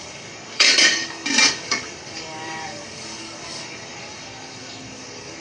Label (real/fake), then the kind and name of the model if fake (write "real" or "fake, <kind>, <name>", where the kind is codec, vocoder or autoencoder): fake, codec, DAC